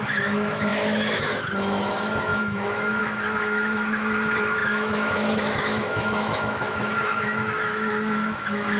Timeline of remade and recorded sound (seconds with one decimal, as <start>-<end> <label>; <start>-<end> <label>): 0.0-8.8 remade